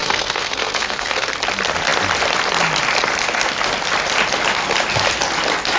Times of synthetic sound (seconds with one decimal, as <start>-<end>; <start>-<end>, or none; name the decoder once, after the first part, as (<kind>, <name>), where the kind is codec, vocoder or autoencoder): 0.0-1.3 (codec, SNAC)